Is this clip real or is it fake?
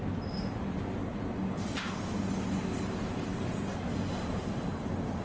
real